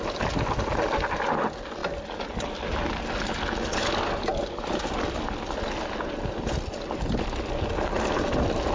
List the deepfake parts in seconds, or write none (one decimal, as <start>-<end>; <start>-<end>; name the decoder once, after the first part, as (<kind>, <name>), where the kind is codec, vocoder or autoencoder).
none